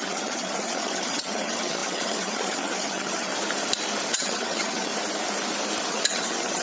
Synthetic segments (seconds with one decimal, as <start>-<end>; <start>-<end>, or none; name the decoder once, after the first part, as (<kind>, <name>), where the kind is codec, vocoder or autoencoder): 0.0-3.3 (vocoder, HiFi-GAN); 4.1-4.9; 5.9-6.6